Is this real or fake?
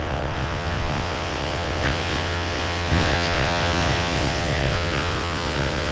fake